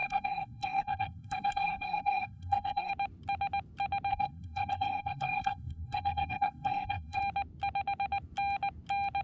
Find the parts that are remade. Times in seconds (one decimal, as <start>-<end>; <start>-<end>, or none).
0.0-2.9; 4.1-7.2